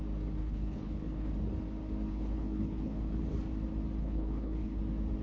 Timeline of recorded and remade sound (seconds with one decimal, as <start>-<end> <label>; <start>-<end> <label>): 0.0-0.4 recorded; 0.4-1.3 remade; 1.3-2.1 recorded; 2.1-3.2 remade; 3.2-4.0 recorded; 4.0-4.8 remade; 4.8-5.2 recorded